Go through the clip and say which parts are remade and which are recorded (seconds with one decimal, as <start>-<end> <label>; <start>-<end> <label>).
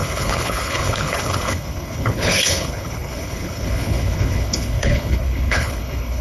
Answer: 0.0-6.2 remade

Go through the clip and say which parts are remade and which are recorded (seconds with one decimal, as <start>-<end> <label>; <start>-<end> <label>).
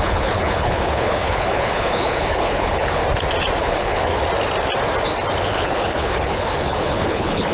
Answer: 0.0-3.0 remade; 3.0-3.6 recorded; 3.6-4.1 remade; 4.1-5.4 recorded; 5.4-7.5 remade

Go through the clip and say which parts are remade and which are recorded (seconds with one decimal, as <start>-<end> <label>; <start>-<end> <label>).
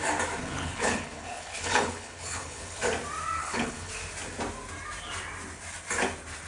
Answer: 0.0-0.4 recorded; 0.4-2.8 remade; 2.8-3.4 recorded; 3.4-3.9 remade; 3.9-6.5 recorded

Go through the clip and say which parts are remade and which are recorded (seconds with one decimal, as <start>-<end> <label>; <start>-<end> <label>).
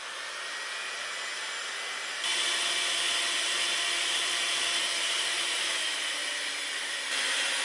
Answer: 0.0-7.6 recorded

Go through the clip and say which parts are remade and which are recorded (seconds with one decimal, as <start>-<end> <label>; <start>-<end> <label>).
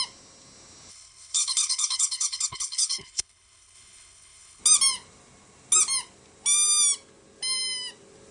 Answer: 0.0-0.9 recorded; 0.9-4.6 remade; 4.6-8.3 recorded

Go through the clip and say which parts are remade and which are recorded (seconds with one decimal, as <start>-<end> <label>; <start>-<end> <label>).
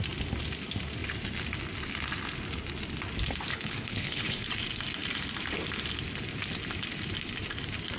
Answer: 0.0-3.5 recorded; 3.5-4.4 remade; 4.4-8.0 recorded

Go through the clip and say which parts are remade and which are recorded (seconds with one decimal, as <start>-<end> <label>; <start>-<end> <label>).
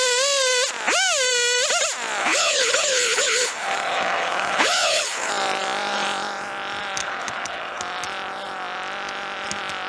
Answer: 0.0-2.2 recorded; 2.2-5.3 remade; 5.3-7.0 recorded; 7.0-7.8 remade; 7.8-9.9 recorded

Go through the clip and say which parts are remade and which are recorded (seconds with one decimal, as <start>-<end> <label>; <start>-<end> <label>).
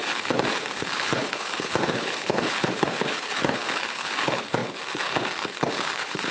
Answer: 0.0-6.3 remade